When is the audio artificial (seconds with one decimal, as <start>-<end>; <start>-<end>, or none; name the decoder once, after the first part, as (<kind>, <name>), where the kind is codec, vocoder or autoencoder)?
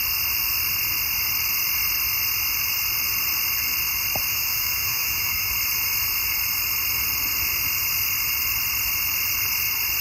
4.3-5.5 (autoencoder, DAC-VAE)